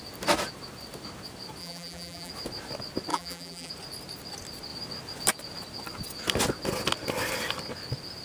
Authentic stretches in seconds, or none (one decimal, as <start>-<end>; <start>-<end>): 0.0-1.6; 2.3-3.1; 3.7-8.2